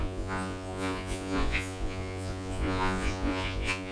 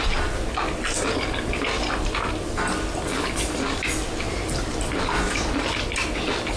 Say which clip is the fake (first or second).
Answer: first